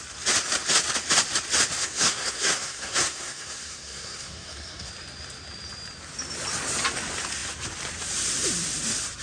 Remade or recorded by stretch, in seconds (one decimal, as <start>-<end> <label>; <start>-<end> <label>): 0.0-1.8 recorded; 1.8-4.9 remade; 4.9-9.2 recorded